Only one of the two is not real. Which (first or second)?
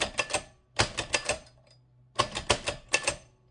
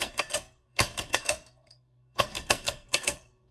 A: second